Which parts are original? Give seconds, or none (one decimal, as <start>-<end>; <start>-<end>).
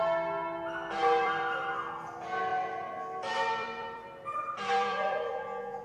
0.0-1.0; 1.7-2.5; 5.3-5.8